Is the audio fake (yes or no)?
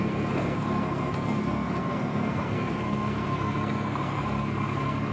yes